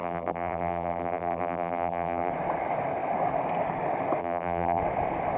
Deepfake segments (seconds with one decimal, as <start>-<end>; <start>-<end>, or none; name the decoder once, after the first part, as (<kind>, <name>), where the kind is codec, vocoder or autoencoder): 0.0-2.3 (vocoder, BigVGAN v2); 4.2-4.8